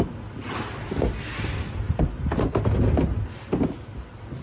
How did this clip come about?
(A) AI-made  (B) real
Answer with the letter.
B